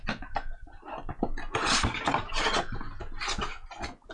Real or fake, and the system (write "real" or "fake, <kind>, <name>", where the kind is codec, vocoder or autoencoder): real